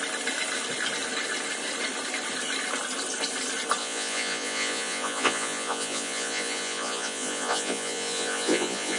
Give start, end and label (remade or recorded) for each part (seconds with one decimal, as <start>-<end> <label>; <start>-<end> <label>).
0.0-3.8 recorded; 3.8-9.0 remade